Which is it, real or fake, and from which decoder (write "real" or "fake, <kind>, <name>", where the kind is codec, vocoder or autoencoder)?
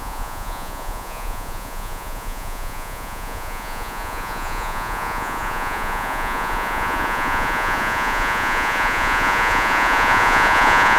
fake, vocoder, Vocos